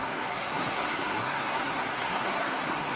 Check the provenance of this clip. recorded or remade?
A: remade